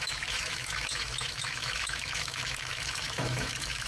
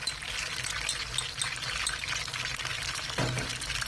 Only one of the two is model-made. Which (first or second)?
first